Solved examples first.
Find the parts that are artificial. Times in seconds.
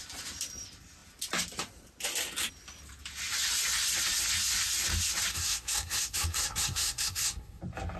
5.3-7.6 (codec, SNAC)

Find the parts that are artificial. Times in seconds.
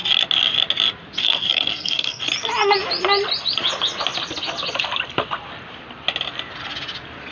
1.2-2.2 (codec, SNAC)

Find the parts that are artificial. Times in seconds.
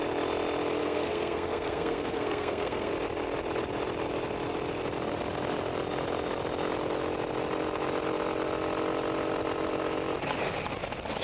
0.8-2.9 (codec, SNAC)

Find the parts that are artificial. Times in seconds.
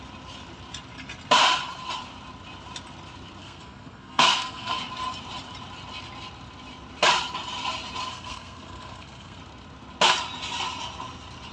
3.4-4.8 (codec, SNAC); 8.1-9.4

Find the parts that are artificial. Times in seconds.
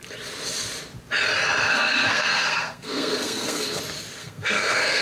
1.6-3.8 (codec, SNAC); 4.2-5.0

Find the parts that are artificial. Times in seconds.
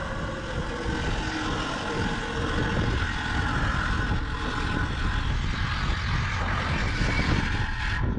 none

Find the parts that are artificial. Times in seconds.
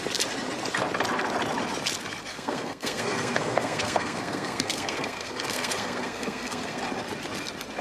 2.3-6.8 (codec, SNAC)